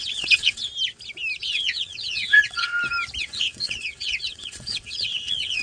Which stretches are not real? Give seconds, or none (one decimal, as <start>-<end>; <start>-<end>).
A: 0.0-0.7; 1.4-2.7; 3.2-5.6